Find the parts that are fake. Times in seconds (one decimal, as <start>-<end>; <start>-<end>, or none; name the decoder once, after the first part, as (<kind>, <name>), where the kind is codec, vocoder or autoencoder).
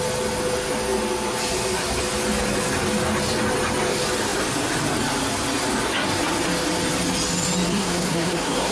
7.7-8.7 (codec, SNAC)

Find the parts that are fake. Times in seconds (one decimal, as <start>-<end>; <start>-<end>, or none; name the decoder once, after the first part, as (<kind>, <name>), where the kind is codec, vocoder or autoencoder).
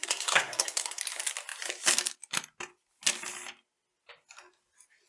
0.0-1.0 (codec, SNAC)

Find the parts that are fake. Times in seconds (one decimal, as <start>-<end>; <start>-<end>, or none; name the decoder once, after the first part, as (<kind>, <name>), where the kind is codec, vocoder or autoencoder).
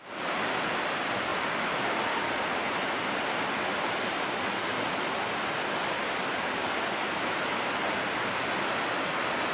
none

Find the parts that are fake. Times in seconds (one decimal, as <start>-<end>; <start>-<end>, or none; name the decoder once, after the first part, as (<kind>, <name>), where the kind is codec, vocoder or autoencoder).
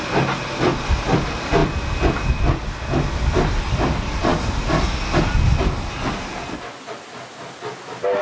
none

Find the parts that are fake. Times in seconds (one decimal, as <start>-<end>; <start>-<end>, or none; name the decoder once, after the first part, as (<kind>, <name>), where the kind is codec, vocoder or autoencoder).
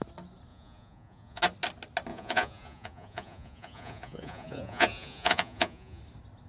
0.5-1.4 (vocoder, Vocos); 2.1-6.0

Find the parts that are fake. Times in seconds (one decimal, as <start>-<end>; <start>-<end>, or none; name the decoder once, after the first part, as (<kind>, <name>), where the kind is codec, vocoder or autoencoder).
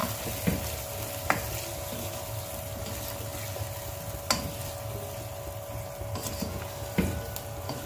none